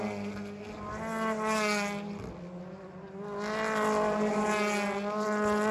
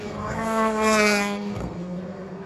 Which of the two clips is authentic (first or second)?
first